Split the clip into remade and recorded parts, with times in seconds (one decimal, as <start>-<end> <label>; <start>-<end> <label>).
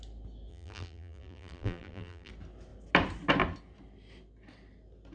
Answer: 0.0-0.5 recorded; 0.5-2.3 remade; 2.3-5.1 recorded